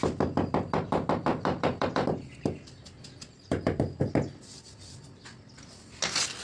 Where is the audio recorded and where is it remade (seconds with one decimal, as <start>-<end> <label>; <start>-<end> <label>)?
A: 0.0-1.3 recorded; 1.3-4.1 remade; 4.1-6.4 recorded